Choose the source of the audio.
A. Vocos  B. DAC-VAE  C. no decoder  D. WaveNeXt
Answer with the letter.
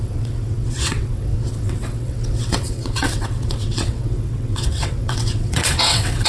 D